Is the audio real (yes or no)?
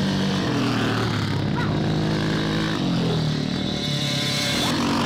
yes